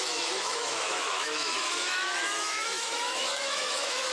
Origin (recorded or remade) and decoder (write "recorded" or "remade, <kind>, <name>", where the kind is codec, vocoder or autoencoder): remade, autoencoder, DAC-VAE